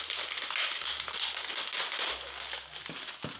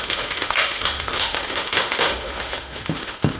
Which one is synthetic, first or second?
second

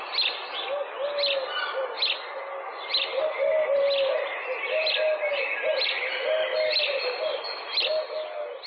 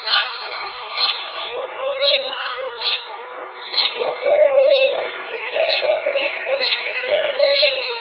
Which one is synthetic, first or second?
second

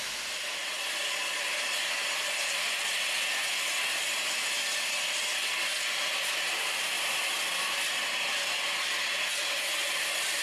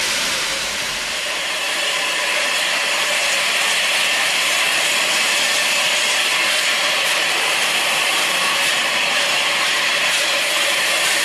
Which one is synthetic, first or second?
second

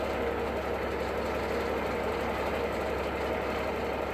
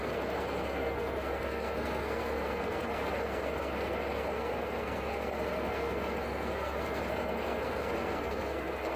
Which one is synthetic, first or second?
second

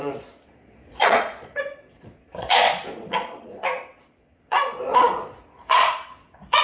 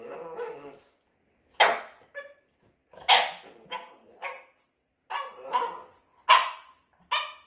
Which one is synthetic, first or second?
first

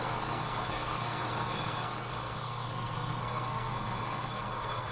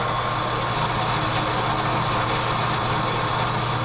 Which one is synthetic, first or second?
first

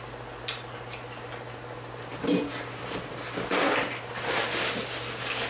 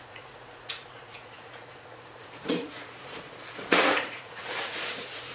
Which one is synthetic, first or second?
second